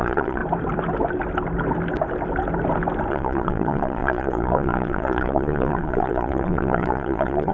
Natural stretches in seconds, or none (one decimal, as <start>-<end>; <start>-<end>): 0.4-3.1